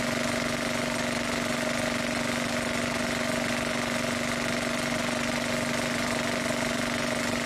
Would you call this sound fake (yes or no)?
no